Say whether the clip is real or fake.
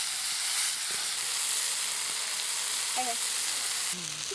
real